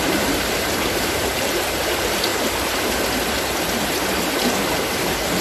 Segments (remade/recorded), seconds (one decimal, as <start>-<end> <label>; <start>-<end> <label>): 0.0-2.3 remade; 2.3-5.0 recorded; 5.0-5.4 remade